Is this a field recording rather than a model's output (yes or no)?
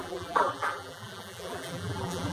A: no